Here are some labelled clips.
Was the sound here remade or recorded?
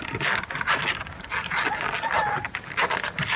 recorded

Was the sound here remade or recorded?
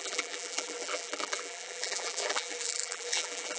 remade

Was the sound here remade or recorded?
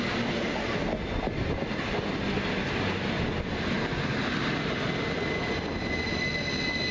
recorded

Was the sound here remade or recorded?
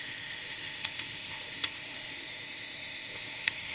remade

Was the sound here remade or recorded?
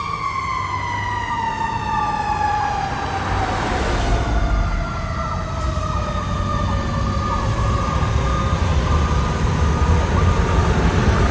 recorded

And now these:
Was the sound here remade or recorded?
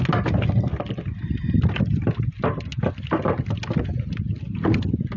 recorded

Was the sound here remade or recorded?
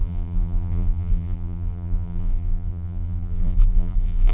remade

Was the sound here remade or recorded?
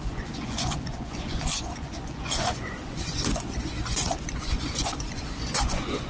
remade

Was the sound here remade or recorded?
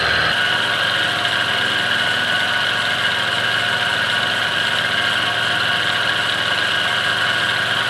recorded